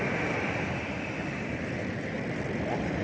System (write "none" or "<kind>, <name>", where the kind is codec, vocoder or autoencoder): vocoder, BigVGAN v2